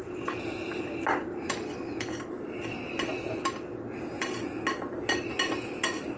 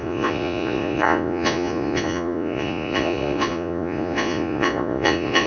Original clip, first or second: first